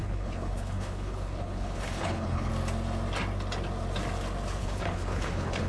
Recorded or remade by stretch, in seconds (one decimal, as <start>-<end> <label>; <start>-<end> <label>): 0.0-2.5 remade; 2.5-4.6 recorded; 4.6-5.7 remade